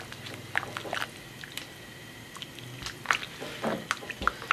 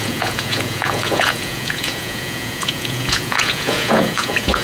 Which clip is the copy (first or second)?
second